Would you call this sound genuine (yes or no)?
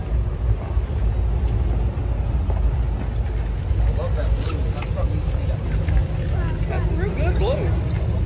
yes